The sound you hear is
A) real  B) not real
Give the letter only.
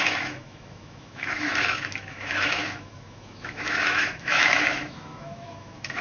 B